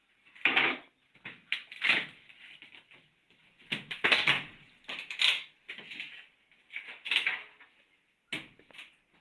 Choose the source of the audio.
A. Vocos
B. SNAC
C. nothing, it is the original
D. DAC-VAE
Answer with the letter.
C